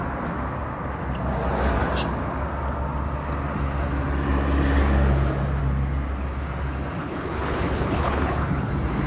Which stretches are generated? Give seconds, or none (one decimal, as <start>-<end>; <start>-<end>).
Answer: 7.0-8.7